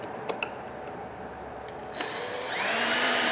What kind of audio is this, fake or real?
fake